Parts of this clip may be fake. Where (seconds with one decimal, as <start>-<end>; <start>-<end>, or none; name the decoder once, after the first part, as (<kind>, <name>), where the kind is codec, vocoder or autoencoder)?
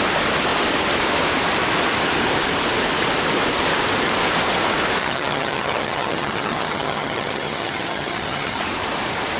5.0-8.6 (vocoder, HiFi-GAN)